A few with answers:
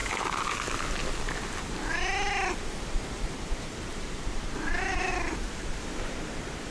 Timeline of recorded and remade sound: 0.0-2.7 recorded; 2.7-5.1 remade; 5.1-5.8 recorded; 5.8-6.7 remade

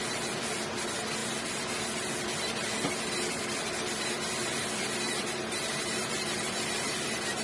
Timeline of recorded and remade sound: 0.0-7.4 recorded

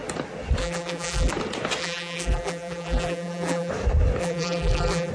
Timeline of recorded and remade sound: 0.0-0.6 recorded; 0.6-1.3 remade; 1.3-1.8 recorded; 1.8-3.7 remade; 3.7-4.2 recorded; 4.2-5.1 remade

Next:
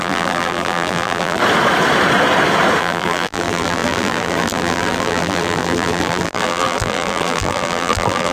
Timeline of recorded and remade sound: 0.0-1.4 remade; 1.4-2.8 recorded; 2.8-8.3 remade

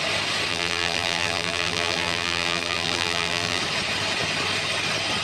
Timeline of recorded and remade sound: 0.0-0.5 recorded; 0.5-3.6 remade; 3.6-5.2 recorded

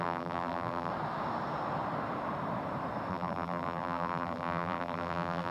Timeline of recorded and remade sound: 0.0-0.9 remade; 0.9-3.1 recorded; 3.1-5.5 remade